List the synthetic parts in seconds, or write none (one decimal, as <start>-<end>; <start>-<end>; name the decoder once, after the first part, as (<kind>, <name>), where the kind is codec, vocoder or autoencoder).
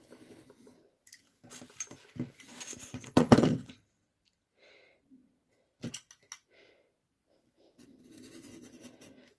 2.8-3.8 (vocoder, WaveNeXt)